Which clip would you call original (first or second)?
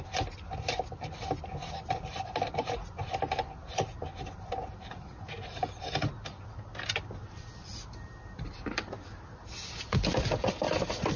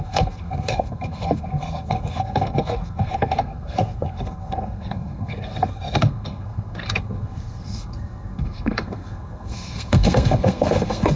first